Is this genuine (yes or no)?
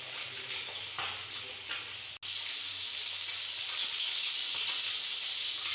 yes